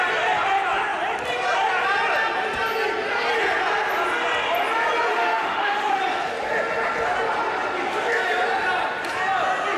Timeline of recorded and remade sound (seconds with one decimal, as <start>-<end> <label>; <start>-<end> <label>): 0.0-5.1 recorded; 5.1-6.0 remade; 6.0-9.8 recorded